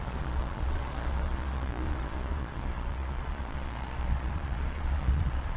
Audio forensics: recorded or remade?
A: remade